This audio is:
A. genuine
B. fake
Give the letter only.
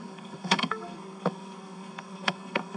B